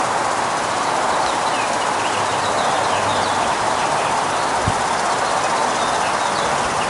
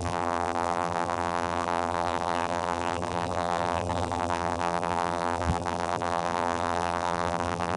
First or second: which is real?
first